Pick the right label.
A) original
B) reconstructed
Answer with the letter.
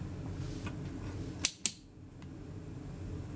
A